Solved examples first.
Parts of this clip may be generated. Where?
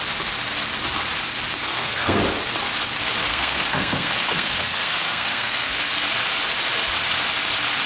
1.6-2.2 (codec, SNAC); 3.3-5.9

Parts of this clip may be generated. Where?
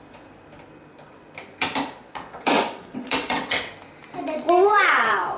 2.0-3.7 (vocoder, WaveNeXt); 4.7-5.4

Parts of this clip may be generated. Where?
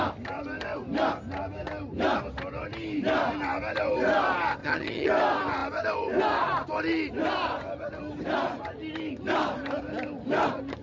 4.6-5.1 (vocoder, HiFi-GAN)